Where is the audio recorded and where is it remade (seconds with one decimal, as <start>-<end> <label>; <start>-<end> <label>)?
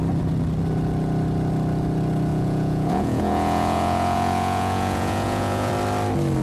0.0-2.3 recorded; 2.3-5.7 remade; 5.7-6.4 recorded